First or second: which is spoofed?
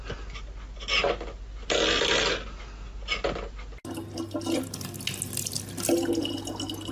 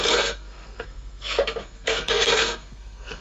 second